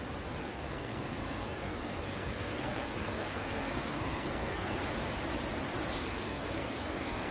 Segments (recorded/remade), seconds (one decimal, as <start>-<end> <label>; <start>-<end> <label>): 0.0-0.4 recorded; 0.4-4.8 remade; 4.8-6.0 recorded; 6.0-7.3 remade